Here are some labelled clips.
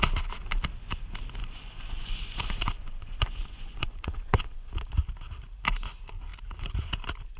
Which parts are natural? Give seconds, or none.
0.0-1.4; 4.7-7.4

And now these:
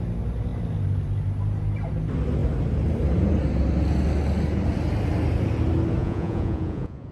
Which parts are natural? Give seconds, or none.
0.0-6.0